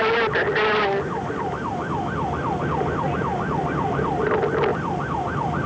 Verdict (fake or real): real